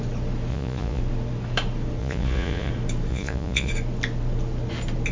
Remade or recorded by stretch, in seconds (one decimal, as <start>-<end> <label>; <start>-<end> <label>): 0.0-0.5 recorded; 0.5-1.0 remade; 1.0-2.0 recorded; 2.0-2.7 remade; 2.7-3.1 recorded; 3.1-3.7 remade; 3.7-5.1 recorded